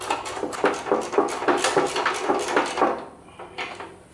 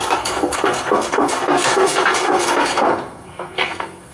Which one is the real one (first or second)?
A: first